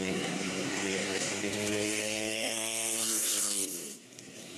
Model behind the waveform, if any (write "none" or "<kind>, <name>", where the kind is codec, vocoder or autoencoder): codec, SNAC